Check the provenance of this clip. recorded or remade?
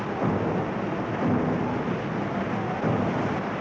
recorded